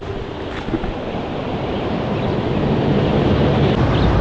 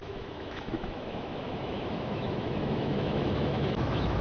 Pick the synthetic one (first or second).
second